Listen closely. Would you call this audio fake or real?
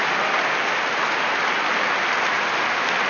real